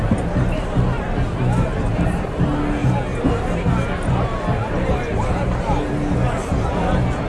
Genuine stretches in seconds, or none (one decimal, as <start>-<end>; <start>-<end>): 0.0-7.3